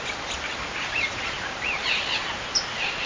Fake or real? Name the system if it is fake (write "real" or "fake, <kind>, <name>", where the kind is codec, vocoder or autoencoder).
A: real